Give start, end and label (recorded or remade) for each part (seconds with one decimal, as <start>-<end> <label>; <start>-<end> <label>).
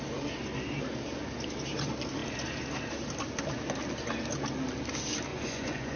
0.0-5.3 recorded; 5.3-6.0 remade